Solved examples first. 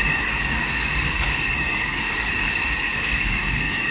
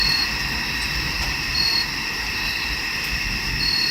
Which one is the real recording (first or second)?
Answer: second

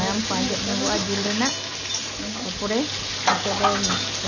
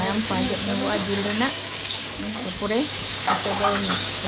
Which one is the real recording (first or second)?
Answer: first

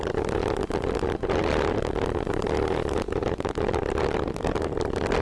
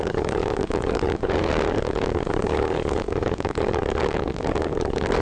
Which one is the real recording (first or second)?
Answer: first